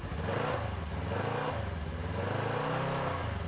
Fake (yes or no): no